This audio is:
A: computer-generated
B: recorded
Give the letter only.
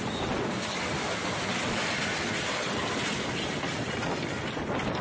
B